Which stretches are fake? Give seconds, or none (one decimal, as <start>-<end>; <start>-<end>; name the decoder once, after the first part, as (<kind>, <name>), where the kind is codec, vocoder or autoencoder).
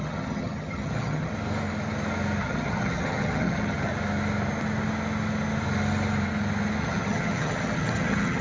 0.0-1.3 (vocoder, HiFi-GAN); 2.4-3.9; 6.8-8.4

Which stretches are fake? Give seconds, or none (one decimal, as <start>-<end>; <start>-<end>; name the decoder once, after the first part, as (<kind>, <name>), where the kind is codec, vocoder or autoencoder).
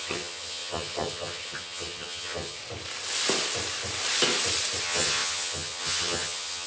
0.0-2.6 (vocoder, HiFi-GAN); 4.8-6.7